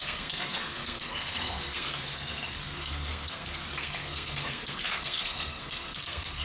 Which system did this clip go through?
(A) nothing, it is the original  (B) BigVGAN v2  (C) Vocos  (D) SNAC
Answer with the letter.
D